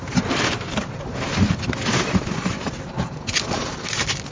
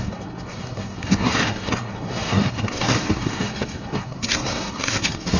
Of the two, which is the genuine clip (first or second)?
first